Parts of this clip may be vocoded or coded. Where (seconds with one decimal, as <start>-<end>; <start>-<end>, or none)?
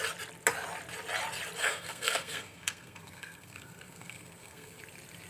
1.6-4.8